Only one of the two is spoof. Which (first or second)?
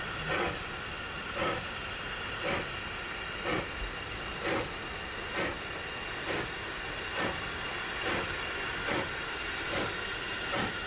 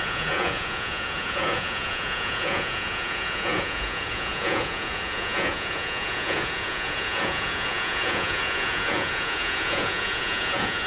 second